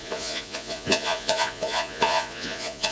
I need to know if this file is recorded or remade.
remade